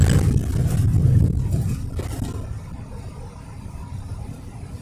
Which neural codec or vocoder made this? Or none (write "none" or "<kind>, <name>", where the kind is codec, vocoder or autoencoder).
none